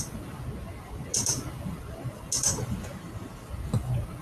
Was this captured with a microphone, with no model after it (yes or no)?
yes